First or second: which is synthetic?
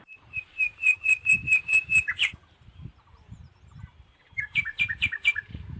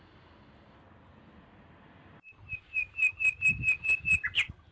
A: first